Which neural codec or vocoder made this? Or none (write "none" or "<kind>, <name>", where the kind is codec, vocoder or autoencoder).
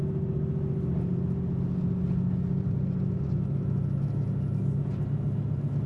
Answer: none